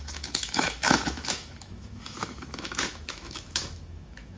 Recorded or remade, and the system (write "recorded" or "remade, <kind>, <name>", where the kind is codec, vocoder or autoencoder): remade, autoencoder, DAC-VAE